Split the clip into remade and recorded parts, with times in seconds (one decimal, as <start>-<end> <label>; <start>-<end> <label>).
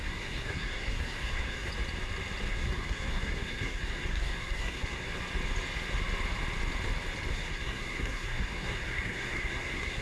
0.0-1.7 remade; 1.7-2.5 recorded; 2.5-5.1 remade; 5.1-7.3 recorded; 7.3-10.0 remade